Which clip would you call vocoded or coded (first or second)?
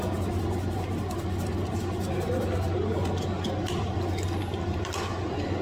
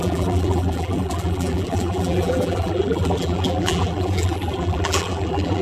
second